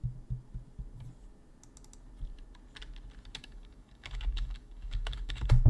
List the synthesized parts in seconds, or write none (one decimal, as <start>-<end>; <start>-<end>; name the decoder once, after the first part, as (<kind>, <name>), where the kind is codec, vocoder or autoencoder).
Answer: 3.4-5.7 (codec, DAC)

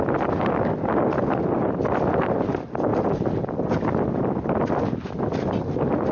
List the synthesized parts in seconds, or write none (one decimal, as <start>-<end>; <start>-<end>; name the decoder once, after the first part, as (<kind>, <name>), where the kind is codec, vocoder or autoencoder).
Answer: none

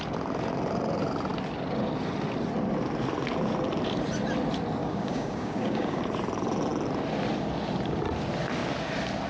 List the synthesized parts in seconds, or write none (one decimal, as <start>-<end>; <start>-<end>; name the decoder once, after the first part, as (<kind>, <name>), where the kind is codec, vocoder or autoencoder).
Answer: 4.8-6.0 (codec, DAC)

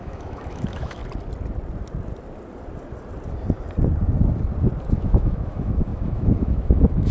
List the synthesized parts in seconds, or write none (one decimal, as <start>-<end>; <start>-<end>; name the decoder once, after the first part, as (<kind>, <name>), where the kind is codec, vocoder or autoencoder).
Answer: 0.0-1.0 (autoencoder, DAC-VAE); 4.9-7.1